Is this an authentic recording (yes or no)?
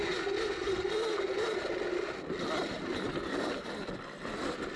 yes